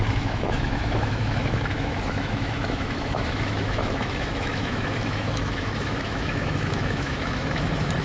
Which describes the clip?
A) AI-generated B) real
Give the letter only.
A